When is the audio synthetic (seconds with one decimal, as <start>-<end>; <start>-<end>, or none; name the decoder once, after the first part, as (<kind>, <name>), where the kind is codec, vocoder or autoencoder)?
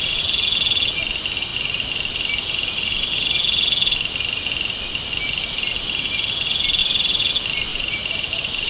6.8-7.3 (vocoder, BigVGAN v2); 7.7-8.7